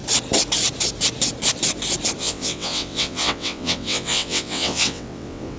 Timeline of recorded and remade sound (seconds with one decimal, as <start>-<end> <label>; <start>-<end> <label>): 0.0-2.2 recorded; 2.2-5.6 remade